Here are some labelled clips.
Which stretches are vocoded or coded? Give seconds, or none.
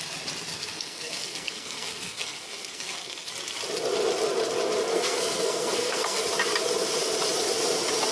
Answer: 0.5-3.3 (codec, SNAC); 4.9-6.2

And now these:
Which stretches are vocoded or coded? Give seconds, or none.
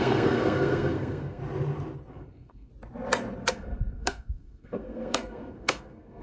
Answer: 0.0-1.4 (codec, SNAC); 2.1-2.7; 3.5-6.2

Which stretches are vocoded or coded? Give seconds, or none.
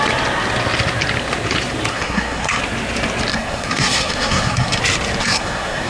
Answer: 1.9-2.6 (codec, SNAC); 3.3-4.8; 5.2-5.9